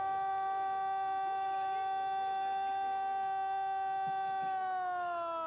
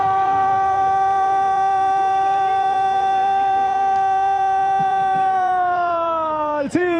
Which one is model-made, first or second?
second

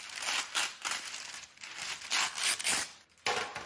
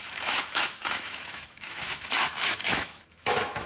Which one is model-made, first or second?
second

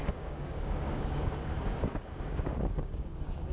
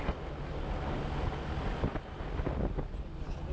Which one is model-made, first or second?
first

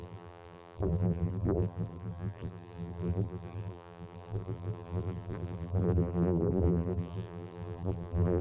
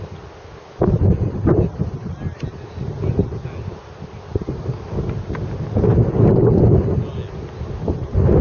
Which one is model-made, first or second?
first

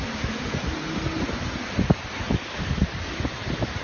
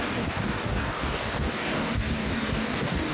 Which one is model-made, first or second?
second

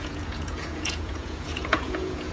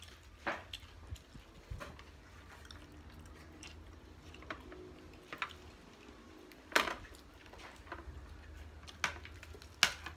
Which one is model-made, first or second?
first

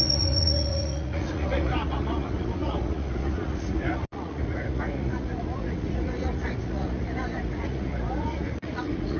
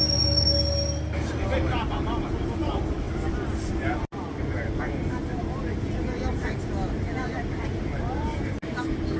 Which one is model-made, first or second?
first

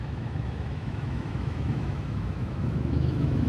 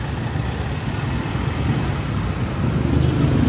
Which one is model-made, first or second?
first